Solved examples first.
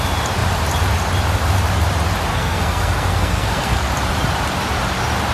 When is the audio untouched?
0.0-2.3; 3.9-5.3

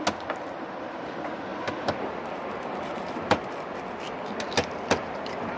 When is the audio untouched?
0.0-5.6

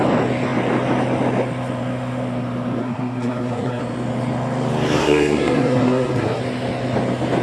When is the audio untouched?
0.0-2.8; 3.8-5.0; 6.4-7.4

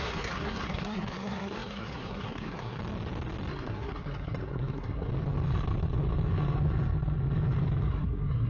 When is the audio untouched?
2.8-3.5; 5.1-7.9

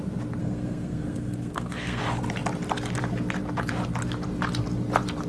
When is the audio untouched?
0.0-0.4; 2.0-5.3

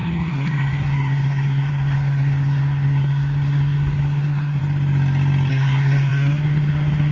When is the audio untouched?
4.6-5.5